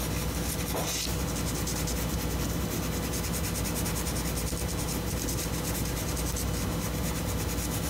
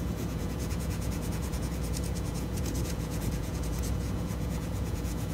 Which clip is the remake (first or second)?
second